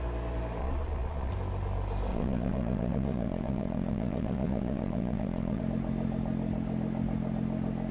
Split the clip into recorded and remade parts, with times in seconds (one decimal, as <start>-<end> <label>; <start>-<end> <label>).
0.0-0.6 recorded; 0.6-1.3 remade; 1.3-2.1 recorded; 2.1-5.6 remade; 5.6-7.9 recorded